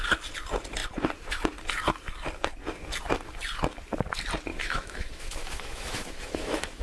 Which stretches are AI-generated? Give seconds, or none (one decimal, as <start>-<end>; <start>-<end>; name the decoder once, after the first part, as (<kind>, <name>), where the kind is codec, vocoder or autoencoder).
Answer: 4.5-6.8 (autoencoder, DAC-VAE)